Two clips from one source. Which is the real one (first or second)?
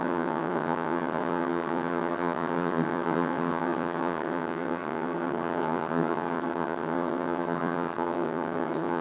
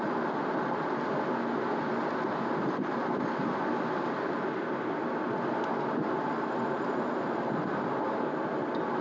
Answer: second